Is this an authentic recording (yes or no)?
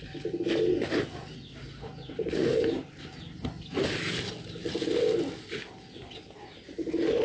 yes